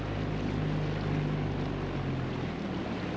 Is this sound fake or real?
real